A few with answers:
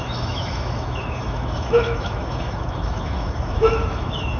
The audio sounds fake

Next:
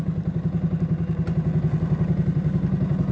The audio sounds real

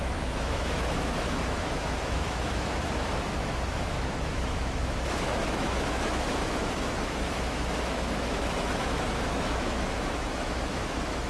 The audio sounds fake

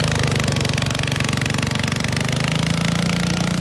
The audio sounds real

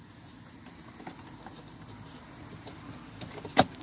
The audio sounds real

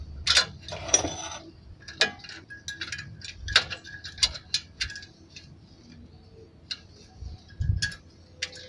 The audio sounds real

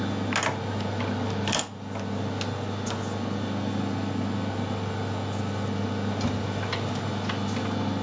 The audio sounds real